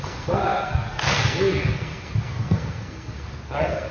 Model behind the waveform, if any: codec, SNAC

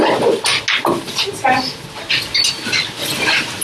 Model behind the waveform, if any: none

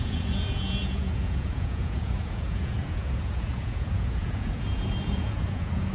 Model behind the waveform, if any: vocoder, Vocos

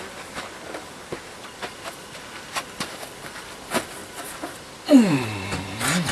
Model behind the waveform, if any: none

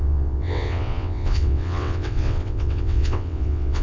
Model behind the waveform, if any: vocoder, WaveNeXt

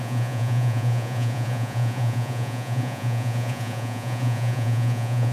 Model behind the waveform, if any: vocoder, Vocos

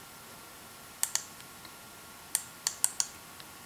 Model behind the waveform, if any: none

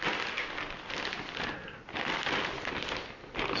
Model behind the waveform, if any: none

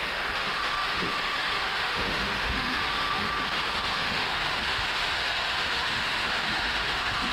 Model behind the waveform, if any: autoencoder, DAC-VAE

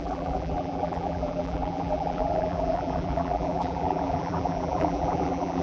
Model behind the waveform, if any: vocoder, BigVGAN v2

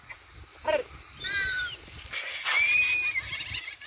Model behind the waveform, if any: vocoder, BigVGAN v2